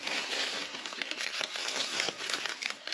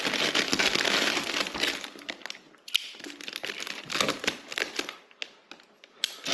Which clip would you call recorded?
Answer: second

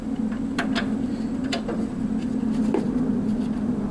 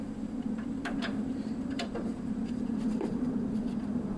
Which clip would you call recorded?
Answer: first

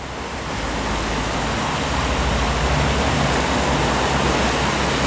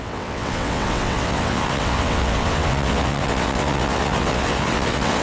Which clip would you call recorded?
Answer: first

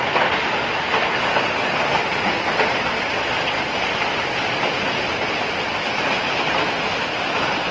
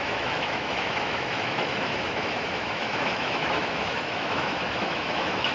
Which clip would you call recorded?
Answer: first